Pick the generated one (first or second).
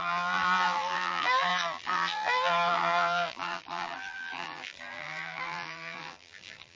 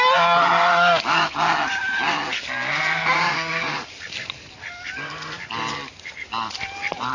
first